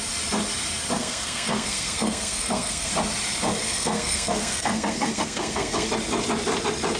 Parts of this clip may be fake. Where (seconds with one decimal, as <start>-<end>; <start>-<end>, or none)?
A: 1.0-2.9; 3.6-5.9